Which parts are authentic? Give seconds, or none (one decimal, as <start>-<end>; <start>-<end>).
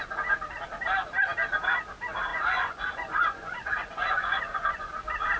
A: 0.0-2.3; 4.9-5.4